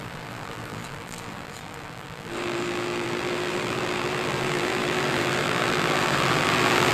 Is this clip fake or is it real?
fake